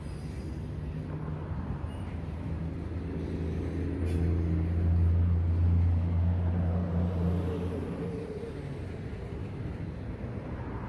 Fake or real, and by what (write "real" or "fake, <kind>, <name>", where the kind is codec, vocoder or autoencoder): real